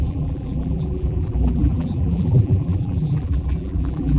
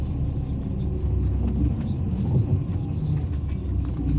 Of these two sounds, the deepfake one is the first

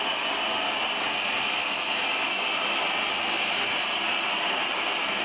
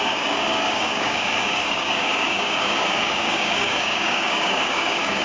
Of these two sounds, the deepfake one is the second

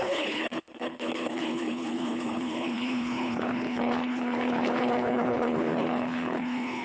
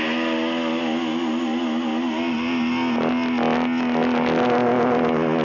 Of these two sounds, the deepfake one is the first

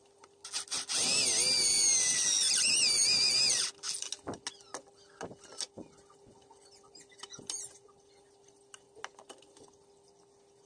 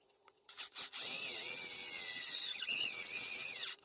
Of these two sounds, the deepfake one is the second